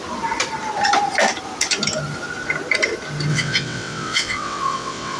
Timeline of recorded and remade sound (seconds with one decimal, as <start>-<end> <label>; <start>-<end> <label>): 0.0-3.3 recorded; 3.3-5.2 remade